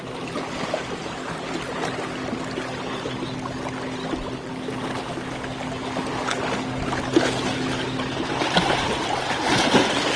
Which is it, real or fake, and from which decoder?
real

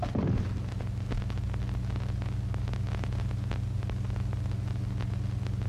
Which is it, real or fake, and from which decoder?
real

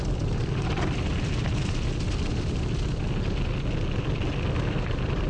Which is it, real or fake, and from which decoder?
real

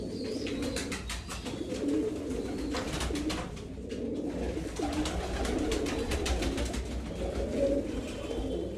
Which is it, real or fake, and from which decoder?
real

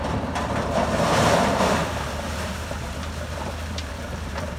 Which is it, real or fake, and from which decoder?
fake, vocoder, BigVGAN v2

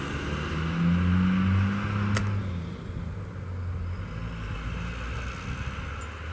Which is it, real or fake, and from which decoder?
real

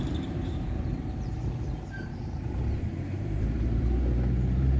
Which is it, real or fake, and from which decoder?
fake, vocoder, BigVGAN v2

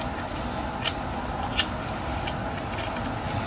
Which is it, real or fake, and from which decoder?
real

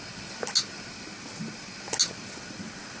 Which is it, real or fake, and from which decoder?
real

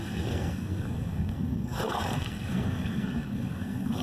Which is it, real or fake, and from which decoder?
fake, codec, SNAC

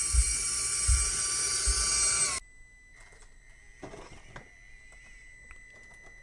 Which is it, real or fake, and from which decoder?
real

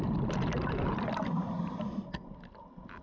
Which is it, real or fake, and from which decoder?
real